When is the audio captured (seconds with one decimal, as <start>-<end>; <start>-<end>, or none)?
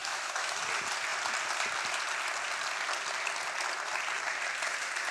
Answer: 0.6-5.1